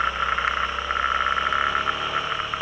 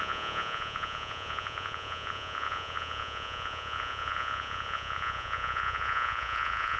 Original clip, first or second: first